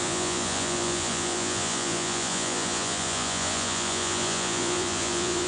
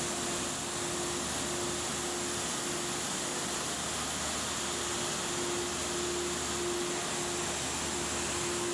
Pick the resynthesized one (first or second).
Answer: first